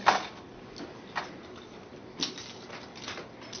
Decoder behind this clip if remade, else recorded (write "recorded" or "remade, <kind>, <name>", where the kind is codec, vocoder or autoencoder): recorded